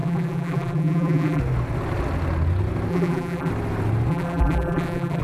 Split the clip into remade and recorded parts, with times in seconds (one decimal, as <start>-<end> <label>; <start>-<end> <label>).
0.0-1.4 remade; 1.4-2.9 recorded; 2.9-3.5 remade; 3.5-4.1 recorded; 4.1-5.2 remade